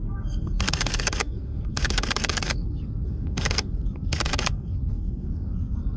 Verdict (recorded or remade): remade